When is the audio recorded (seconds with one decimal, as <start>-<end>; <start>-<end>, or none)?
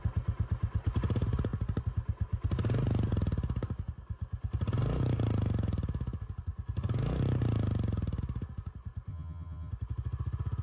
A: 0.0-9.1; 9.7-10.6